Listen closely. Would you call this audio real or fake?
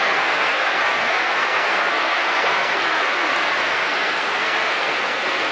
fake